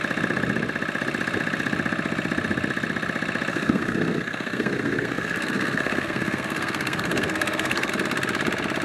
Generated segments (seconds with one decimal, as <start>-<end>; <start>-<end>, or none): 3.5-7.9